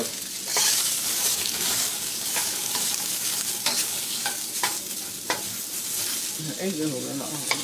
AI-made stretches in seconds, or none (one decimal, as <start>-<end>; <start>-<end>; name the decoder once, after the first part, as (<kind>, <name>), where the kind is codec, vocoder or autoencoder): 0.5-4.6 (codec, DAC)